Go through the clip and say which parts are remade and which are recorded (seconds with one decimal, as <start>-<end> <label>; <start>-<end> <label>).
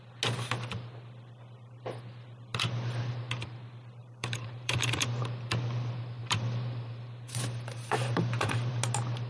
0.0-4.0 recorded; 4.0-5.2 remade; 5.2-6.2 recorded; 6.2-8.7 remade; 8.7-9.3 recorded